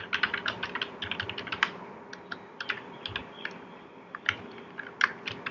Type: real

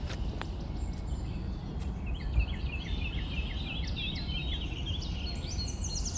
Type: real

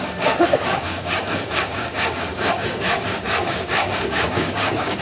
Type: fake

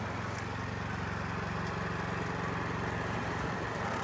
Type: real